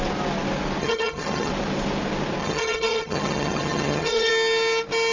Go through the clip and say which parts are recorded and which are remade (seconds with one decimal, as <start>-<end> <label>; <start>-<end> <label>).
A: 0.0-0.8 recorded; 0.8-1.5 remade; 1.5-2.4 recorded; 2.4-4.3 remade; 4.3-5.1 recorded